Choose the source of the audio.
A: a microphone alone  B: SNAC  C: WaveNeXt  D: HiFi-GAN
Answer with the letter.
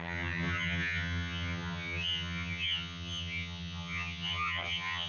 D